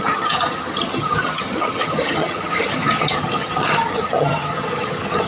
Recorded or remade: remade